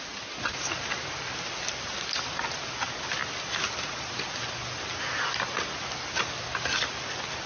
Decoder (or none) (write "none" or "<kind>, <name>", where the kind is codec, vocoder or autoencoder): none